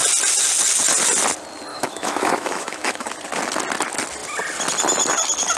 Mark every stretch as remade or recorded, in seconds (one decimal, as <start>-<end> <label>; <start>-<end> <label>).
0.0-1.7 recorded; 1.7-3.1 remade; 3.1-5.6 recorded